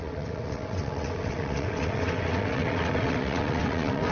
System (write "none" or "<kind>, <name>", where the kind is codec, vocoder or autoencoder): vocoder, WaveNeXt